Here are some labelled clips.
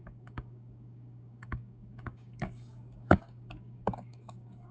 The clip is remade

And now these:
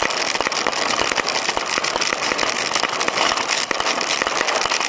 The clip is recorded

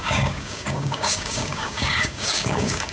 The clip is remade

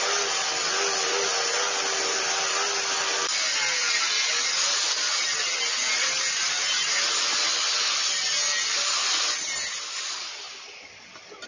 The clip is recorded